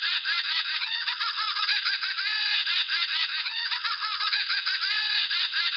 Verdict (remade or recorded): remade